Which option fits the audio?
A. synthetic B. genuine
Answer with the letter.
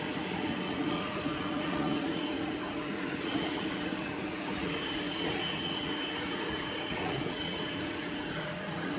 A